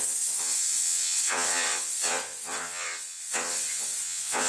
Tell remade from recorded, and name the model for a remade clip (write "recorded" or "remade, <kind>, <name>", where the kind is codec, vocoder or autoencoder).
remade, vocoder, WaveNeXt